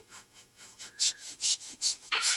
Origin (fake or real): fake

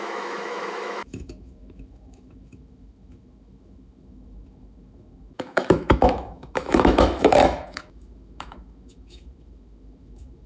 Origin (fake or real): fake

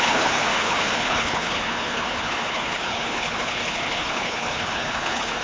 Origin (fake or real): fake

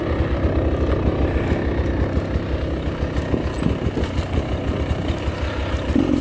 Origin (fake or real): real